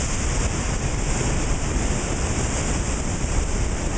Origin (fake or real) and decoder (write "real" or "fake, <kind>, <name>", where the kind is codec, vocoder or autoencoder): real